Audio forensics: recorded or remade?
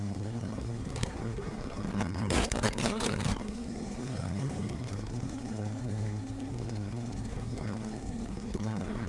remade